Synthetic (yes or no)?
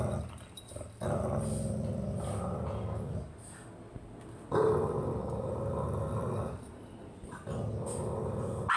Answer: no